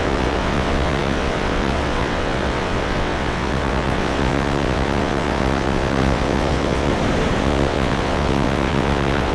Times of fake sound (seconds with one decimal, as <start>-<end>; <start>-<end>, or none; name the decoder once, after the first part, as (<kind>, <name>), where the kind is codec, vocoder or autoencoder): 0.0-6.9 (vocoder, WaveNeXt); 7.4-9.3